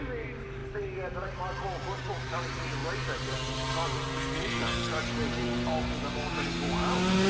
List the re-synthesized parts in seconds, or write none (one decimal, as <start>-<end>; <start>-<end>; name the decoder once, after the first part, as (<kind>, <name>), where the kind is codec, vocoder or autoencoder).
none